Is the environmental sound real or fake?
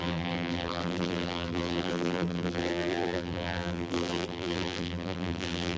fake